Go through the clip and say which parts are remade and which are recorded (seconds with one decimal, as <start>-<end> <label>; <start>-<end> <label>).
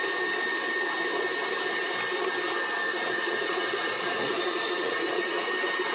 0.0-2.9 recorded; 2.9-5.5 remade; 5.5-5.9 recorded